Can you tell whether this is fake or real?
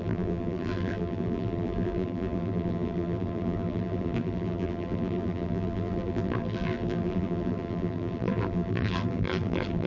fake